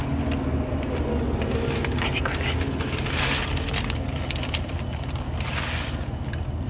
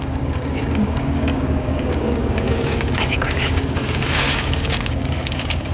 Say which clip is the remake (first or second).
second